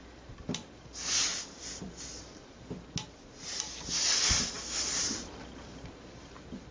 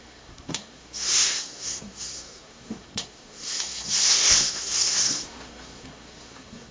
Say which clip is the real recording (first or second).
first